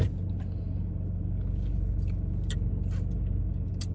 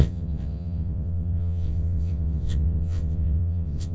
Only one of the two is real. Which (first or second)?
first